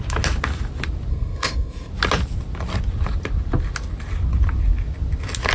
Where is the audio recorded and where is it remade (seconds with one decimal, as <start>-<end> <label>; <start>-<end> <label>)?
0.0-1.1 recorded; 1.1-1.9 remade; 1.9-5.5 recorded